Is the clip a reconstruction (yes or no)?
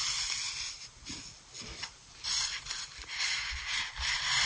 no